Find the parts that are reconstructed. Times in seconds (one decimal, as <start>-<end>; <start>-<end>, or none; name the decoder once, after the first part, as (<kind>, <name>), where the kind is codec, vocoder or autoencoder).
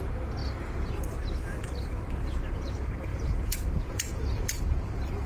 3.1-4.6 (vocoder, Vocos)